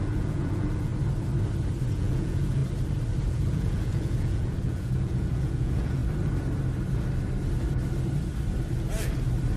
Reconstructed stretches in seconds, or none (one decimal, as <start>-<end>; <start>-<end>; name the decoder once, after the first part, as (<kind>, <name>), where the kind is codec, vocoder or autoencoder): 0.0-0.9 (vocoder, Vocos); 1.9-2.6; 3.3-6.0

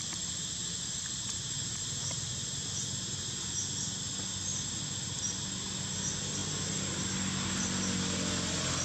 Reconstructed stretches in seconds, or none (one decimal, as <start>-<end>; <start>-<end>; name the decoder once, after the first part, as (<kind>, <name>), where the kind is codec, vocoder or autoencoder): none

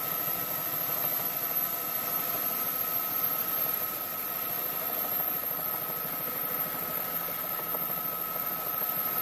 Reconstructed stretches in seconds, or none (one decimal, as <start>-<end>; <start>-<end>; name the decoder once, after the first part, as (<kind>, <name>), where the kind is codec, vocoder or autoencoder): none

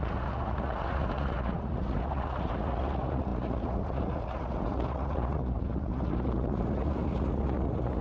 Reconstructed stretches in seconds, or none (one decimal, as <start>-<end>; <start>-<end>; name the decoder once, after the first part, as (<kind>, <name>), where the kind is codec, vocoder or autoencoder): 0.0-8.0 (vocoder, Vocos)